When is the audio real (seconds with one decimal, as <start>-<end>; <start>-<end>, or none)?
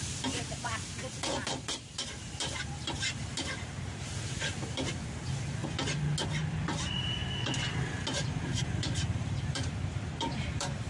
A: 5.6-6.5; 7.2-8.4